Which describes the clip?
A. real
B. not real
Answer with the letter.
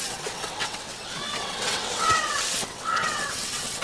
B